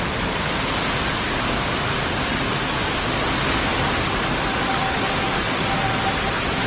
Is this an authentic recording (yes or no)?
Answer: yes